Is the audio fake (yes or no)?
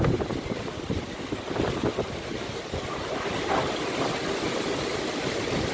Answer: no